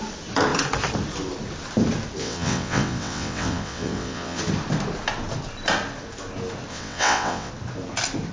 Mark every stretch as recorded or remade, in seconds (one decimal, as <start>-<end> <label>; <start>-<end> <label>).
0.0-2.2 recorded; 2.2-4.4 remade; 4.4-6.7 recorded; 6.7-7.5 remade; 7.5-8.3 recorded